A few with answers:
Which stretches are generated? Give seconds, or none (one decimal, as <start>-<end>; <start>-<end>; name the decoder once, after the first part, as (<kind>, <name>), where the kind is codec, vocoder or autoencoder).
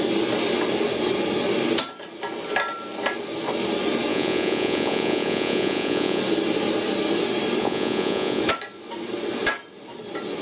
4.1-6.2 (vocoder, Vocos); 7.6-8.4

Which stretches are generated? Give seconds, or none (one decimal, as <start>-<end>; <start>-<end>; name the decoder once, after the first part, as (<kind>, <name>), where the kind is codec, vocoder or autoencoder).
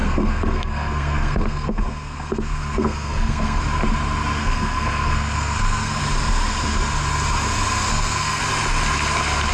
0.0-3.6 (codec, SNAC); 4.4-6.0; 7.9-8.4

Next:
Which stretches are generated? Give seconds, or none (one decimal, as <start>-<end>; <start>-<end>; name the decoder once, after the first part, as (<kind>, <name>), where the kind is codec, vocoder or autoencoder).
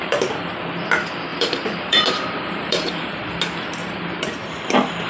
0.0-0.5 (vocoder, BigVGAN v2); 1.3-3.0; 3.8-5.1